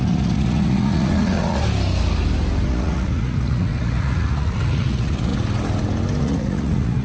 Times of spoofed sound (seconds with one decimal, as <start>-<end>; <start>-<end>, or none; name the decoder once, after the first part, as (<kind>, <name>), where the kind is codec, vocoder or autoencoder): 0.0-1.6 (vocoder, Vocos); 2.7-5.3; 6.2-7.0

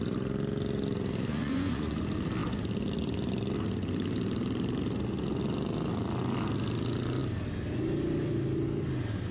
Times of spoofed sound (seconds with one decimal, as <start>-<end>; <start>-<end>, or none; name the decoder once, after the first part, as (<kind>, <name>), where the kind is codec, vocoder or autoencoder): 1.3-2.0 (vocoder, Vocos)

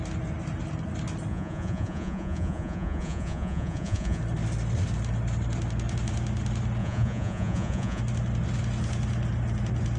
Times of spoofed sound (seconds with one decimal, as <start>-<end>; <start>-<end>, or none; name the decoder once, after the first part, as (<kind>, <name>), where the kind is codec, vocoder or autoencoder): 1.3-4.2 (vocoder, Vocos); 6.8-8.0

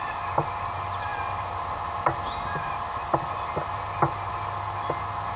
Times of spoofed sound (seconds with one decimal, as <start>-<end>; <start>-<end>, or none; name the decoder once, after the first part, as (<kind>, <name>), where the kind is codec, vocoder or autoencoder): none

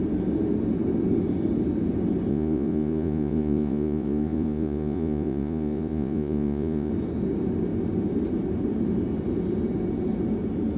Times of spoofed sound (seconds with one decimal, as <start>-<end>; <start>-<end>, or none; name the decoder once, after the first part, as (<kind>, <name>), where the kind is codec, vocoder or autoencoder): 2.3-6.9 (vocoder, Vocos)

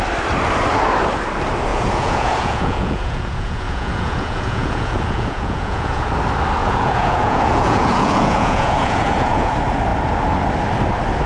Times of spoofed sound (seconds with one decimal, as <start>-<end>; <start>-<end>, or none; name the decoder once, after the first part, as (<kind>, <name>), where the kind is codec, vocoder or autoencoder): 1.7-6.1 (vocoder, Vocos); 6.6-9.5

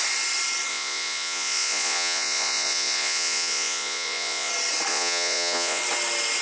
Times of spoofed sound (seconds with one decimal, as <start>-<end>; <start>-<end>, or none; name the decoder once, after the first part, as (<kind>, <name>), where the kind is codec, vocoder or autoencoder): 0.7-4.5 (vocoder, Vocos); 4.9-5.8

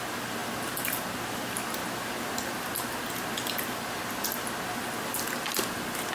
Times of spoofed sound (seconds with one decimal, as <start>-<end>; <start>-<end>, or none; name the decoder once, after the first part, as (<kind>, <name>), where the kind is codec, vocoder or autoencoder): none